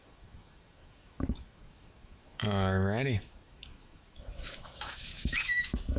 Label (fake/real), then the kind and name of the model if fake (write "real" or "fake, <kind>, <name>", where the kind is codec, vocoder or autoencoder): fake, autoencoder, DAC-VAE